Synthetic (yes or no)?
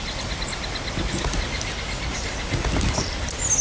no